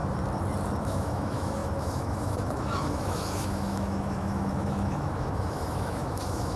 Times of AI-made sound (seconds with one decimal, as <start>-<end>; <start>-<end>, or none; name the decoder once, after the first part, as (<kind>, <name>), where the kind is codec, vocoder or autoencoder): 0.8-6.6 (autoencoder, DAC-VAE)